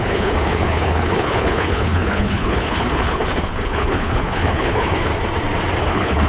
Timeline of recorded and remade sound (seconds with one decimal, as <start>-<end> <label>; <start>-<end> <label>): 0.0-5.1 remade; 5.1-5.8 recorded; 5.8-6.3 remade